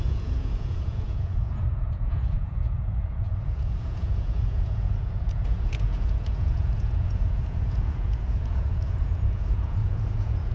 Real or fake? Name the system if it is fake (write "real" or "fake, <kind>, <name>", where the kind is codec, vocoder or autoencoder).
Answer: fake, vocoder, Vocos